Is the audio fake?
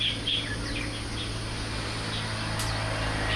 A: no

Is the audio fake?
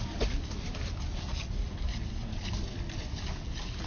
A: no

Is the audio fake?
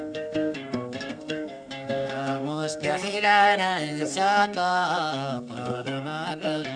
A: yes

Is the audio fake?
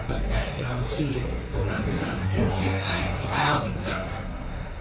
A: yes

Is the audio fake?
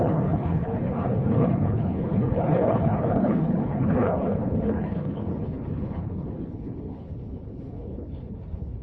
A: yes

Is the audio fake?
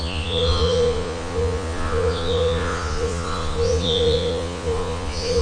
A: yes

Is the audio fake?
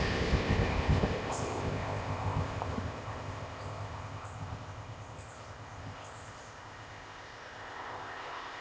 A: yes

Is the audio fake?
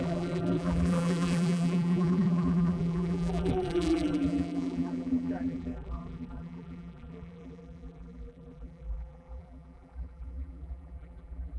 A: yes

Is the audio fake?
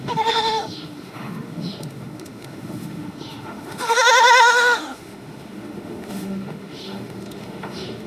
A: yes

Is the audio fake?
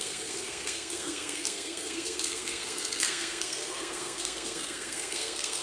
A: yes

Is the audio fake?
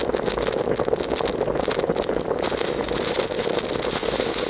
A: no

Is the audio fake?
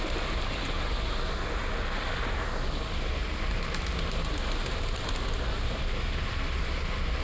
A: no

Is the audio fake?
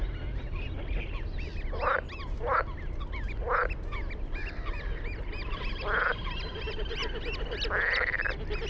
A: no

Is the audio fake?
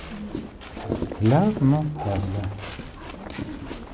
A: no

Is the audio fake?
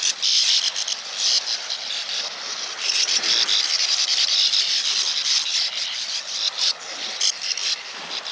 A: no